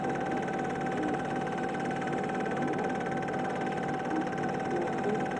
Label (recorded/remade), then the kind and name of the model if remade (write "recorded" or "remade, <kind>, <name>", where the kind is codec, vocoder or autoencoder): recorded